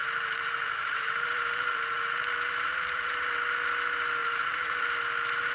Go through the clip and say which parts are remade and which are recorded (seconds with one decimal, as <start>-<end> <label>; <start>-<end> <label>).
0.0-3.3 remade; 3.3-4.2 recorded; 4.2-4.9 remade; 4.9-5.5 recorded